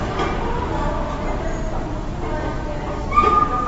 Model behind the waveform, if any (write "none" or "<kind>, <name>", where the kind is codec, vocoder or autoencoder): none